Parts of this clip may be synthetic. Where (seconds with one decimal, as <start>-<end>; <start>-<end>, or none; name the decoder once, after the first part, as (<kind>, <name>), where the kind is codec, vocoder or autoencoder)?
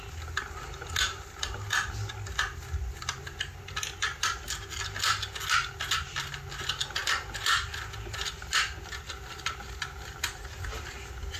none